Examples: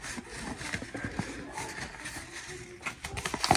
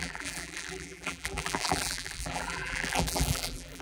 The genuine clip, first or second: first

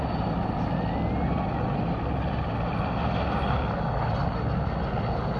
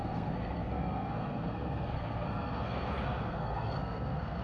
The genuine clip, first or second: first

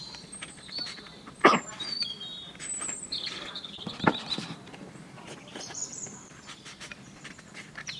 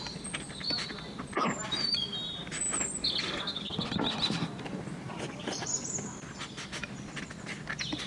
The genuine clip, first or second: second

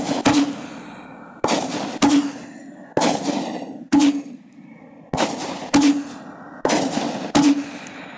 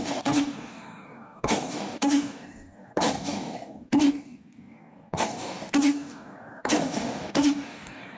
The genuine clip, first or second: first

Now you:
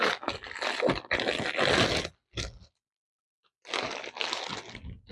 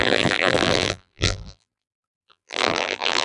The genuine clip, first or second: first